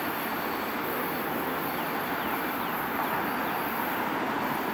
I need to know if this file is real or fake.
real